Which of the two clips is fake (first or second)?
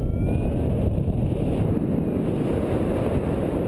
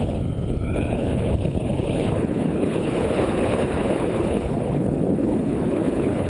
second